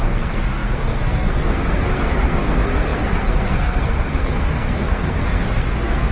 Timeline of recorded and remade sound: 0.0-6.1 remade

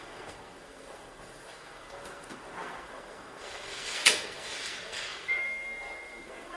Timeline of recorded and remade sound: 0.0-6.6 remade